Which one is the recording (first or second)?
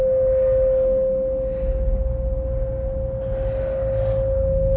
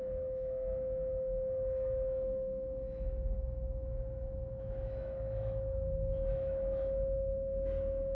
first